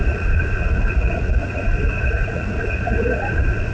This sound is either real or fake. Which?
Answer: fake